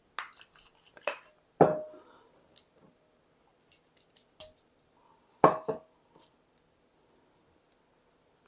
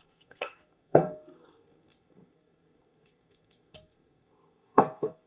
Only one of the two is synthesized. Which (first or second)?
second